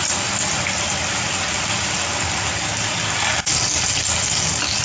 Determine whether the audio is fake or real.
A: real